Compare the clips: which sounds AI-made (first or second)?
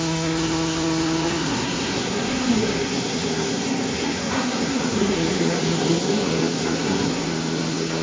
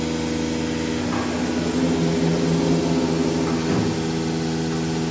first